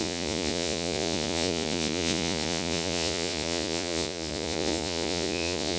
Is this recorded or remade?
remade